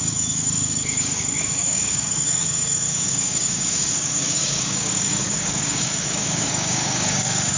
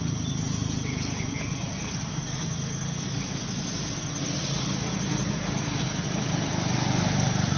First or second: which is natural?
second